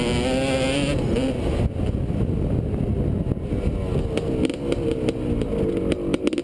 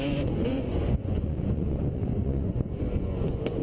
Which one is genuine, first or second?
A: first